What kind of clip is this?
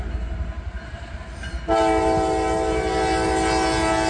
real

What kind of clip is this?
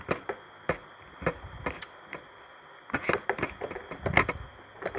real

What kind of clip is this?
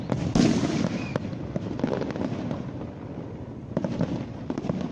real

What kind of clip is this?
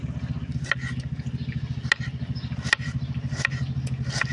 real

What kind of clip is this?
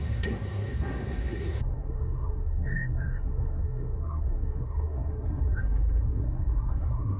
fake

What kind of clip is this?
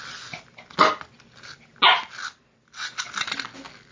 real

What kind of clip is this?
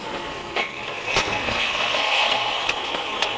fake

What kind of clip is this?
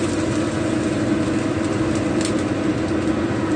real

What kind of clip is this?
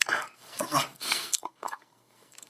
fake